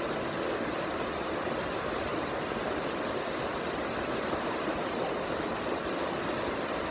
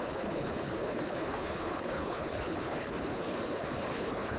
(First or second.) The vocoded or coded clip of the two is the second